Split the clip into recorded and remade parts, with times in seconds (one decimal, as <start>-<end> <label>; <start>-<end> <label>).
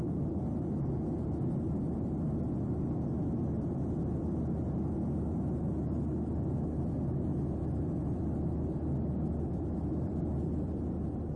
0.0-7.3 recorded; 7.3-11.4 remade